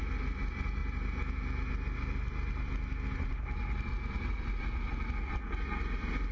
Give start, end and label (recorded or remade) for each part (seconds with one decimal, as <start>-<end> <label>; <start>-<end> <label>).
0.0-6.3 recorded